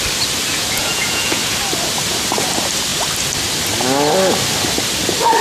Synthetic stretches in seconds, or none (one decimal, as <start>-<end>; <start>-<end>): 0.5-1.4

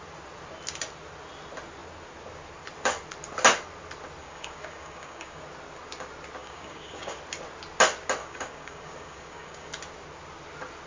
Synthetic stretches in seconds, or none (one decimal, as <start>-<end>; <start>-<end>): 4.2-5.4; 6.4-7.2; 8.2-9.7

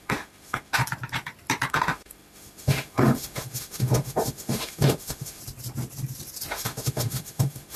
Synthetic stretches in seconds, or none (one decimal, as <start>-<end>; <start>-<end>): 0.0-0.8; 1.7-5.4; 6.5-7.8

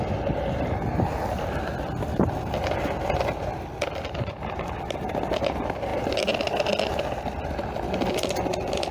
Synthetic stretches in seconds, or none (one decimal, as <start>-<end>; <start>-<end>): none

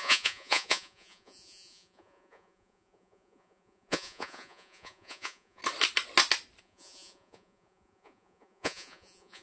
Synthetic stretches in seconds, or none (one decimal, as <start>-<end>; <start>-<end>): 0.0-5.6; 6.6-9.4

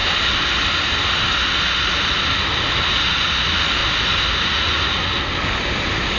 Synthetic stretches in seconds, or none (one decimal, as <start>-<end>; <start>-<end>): none

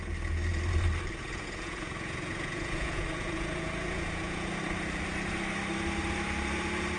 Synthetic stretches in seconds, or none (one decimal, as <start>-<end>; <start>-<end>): 1.2-4.6

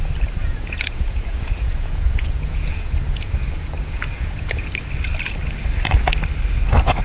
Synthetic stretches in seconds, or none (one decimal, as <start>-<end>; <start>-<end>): 0.4-4.6